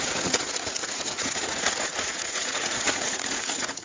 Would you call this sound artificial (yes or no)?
yes